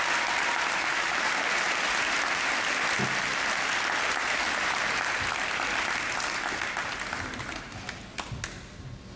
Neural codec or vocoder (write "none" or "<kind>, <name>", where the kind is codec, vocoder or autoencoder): none